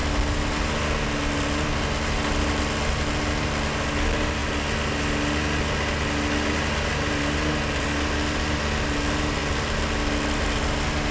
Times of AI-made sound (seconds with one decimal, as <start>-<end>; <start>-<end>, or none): none